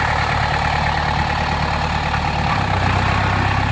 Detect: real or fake real